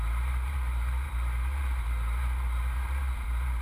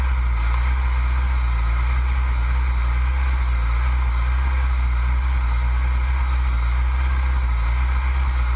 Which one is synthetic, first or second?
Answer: first